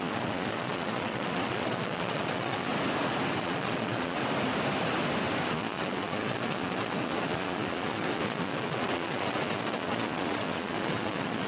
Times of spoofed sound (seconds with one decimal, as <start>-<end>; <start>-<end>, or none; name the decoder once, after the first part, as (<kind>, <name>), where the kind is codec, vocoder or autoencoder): 0.0-2.7 (vocoder, Vocos); 3.4-4.2; 5.5-11.5